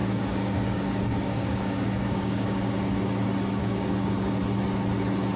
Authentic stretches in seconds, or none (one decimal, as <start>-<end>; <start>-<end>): 2.7-3.6; 4.4-5.4